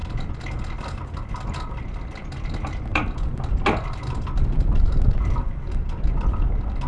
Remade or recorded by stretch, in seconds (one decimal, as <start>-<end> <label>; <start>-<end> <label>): 0.0-2.9 recorded; 2.9-3.4 remade; 3.4-6.9 recorded